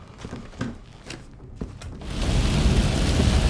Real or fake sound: real